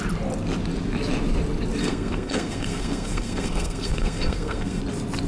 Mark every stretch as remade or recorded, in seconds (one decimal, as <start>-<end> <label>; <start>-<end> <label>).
0.0-1.8 recorded; 1.8-4.8 remade; 4.8-5.3 recorded